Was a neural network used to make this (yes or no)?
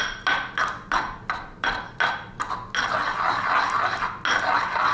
no